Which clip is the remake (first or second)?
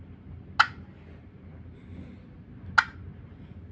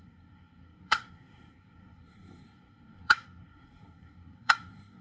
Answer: second